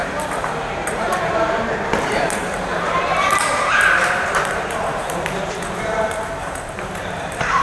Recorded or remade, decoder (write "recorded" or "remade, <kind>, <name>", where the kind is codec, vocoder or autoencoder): remade, vocoder, BigVGAN v2